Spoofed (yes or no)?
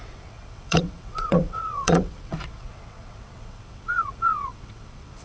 yes